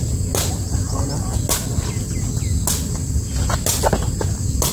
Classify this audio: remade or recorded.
recorded